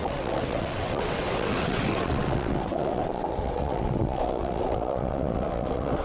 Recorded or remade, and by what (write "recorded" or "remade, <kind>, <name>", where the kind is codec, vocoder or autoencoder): remade, vocoder, WaveNeXt